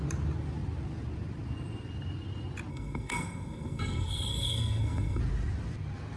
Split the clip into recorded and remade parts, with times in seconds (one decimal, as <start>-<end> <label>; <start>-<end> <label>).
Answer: 0.0-2.7 recorded; 2.7-5.2 remade; 5.2-6.2 recorded